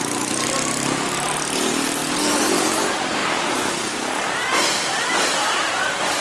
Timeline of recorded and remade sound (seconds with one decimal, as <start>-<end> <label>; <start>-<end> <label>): 0.0-6.2 remade